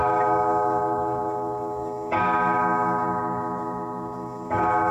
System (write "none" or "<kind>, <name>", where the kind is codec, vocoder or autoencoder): autoencoder, DAC-VAE